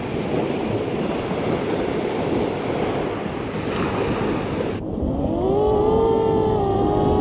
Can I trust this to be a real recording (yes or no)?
yes